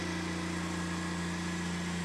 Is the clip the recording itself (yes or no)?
yes